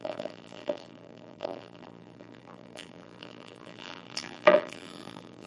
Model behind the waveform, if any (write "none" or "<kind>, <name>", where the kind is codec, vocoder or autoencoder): vocoder, BigVGAN v2